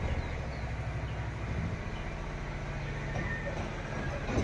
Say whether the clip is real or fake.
real